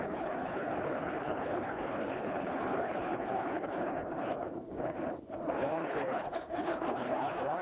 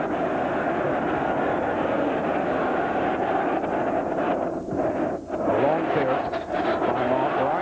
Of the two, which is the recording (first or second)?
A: second